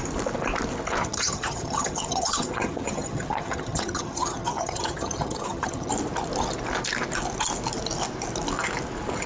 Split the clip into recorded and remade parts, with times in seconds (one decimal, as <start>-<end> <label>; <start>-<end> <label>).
0.0-1.0 recorded; 1.0-5.9 remade; 5.9-9.3 recorded